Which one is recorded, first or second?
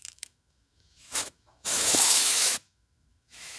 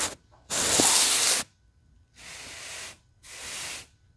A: second